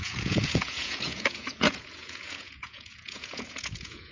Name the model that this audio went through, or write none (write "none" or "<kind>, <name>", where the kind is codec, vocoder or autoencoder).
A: vocoder, Vocos